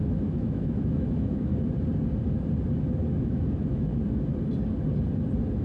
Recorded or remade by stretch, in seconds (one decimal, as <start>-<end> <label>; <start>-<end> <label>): 0.0-1.5 remade; 1.5-3.1 recorded; 3.1-3.9 remade; 3.9-5.6 recorded